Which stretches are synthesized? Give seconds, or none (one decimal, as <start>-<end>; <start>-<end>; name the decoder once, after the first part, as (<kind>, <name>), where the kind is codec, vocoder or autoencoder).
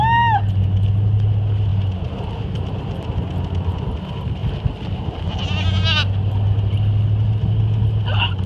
none